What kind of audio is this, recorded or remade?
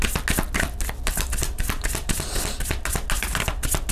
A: recorded